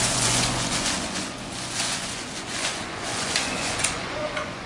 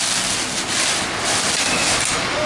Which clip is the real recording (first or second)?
second